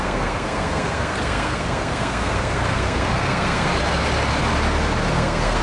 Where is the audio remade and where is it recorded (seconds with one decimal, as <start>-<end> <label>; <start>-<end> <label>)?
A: 0.0-3.7 remade; 3.7-5.1 recorded; 5.1-5.6 remade